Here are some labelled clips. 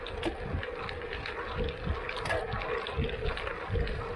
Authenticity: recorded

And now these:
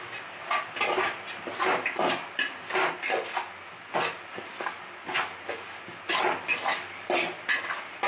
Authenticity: recorded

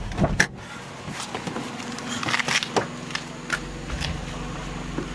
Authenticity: recorded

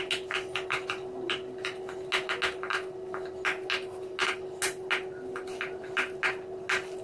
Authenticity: recorded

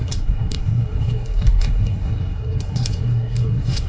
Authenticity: remade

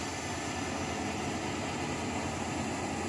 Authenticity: recorded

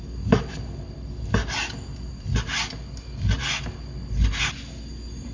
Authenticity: recorded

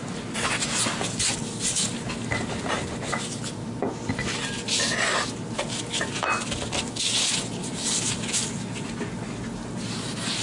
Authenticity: recorded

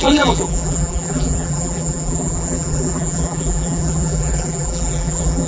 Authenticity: remade